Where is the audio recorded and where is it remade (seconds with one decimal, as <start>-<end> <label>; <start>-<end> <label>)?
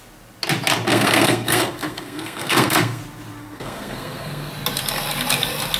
0.0-0.9 recorded; 0.9-3.0 remade; 3.0-3.4 recorded; 3.4-4.5 remade; 4.5-5.8 recorded